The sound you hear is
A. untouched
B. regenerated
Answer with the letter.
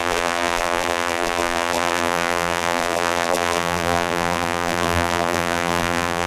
B